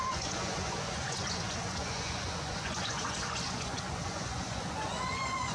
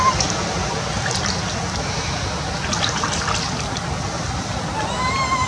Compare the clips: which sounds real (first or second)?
second